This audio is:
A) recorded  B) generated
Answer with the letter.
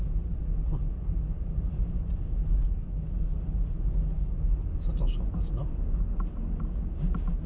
A